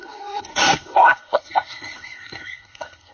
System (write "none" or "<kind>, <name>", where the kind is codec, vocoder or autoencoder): codec, SNAC